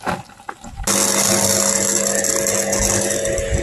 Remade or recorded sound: recorded